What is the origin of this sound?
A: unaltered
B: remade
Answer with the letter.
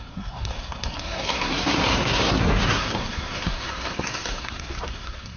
B